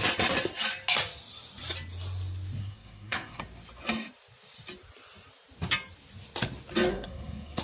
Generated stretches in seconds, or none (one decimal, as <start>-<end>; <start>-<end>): 2.6-3.4; 6.9-7.6